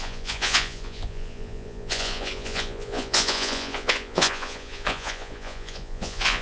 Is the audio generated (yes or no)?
yes